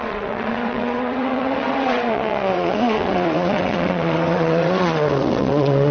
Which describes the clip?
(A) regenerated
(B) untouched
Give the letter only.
A